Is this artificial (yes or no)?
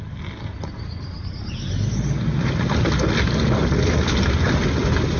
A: no